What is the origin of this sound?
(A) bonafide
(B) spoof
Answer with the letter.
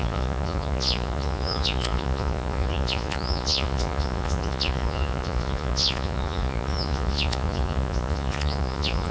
B